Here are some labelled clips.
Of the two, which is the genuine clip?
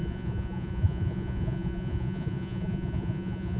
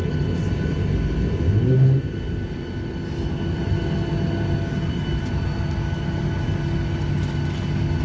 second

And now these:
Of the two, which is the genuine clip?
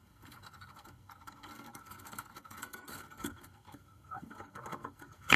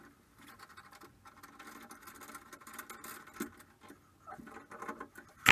second